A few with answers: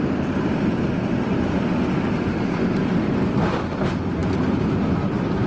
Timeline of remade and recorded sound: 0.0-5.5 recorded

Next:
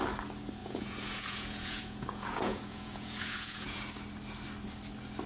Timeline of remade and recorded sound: 0.0-0.6 recorded; 0.6-3.8 remade; 3.8-5.3 recorded

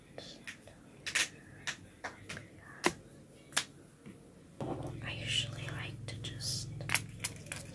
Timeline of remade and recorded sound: 0.0-7.7 recorded

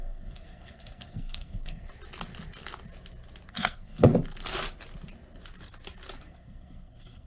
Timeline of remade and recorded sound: 0.0-1.9 remade; 1.9-3.5 recorded; 3.5-4.1 remade; 4.1-6.2 recorded; 6.2-7.3 remade

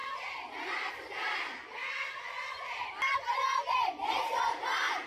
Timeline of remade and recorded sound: 0.0-5.1 recorded